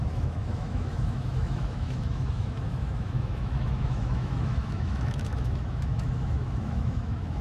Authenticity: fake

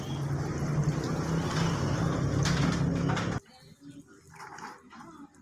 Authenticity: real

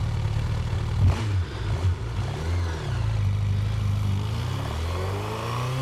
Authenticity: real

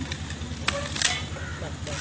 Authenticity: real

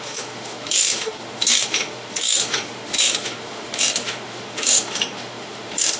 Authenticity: fake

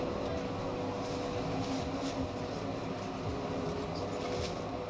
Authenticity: real